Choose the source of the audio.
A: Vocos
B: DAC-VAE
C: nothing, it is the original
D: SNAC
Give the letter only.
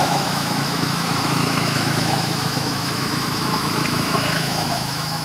B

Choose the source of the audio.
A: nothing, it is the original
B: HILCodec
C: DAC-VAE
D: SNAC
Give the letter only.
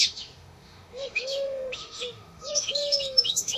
C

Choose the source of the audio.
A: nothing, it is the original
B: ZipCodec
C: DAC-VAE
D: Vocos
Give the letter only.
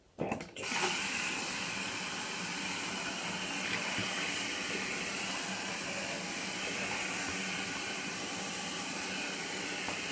A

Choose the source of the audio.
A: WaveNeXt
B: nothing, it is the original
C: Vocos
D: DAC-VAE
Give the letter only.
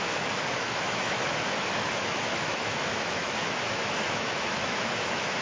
D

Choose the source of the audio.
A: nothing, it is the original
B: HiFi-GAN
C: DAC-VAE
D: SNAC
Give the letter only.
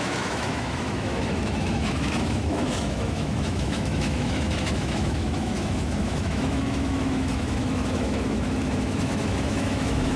C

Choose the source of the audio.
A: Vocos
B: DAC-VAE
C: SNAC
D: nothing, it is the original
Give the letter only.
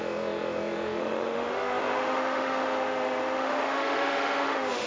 B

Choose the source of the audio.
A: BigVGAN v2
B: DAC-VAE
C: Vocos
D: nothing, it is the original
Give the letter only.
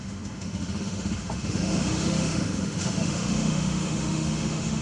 B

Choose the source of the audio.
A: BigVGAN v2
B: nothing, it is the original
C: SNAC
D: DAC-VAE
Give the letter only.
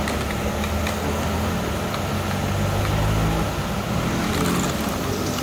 B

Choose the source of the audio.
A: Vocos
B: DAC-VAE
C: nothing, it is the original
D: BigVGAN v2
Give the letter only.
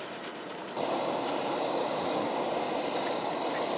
C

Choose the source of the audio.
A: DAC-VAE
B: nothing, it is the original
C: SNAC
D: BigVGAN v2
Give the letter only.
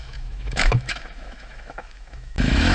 A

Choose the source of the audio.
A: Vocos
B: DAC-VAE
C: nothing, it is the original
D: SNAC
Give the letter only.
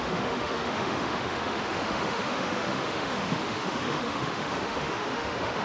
B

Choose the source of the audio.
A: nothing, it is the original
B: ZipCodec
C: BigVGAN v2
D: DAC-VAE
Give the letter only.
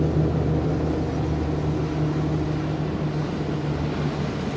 A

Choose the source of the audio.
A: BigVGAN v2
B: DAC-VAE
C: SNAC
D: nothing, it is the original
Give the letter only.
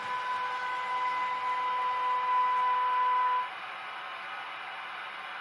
D